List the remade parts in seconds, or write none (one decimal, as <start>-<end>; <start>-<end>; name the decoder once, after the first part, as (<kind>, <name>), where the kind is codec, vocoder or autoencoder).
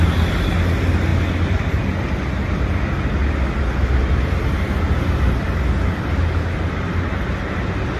none